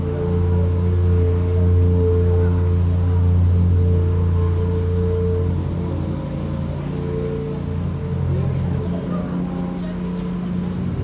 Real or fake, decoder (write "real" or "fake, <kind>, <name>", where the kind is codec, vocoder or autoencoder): real